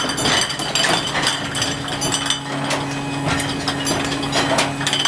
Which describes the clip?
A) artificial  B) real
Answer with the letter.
B